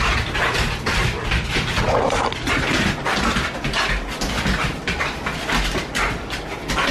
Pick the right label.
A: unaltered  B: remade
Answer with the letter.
A